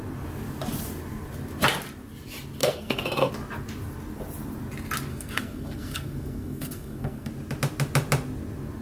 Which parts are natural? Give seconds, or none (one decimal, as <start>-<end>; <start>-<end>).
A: 0.0-2.6; 3.3-5.1; 7.3-8.8